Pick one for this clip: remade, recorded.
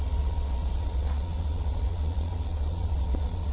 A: remade